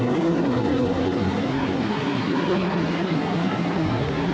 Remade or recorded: remade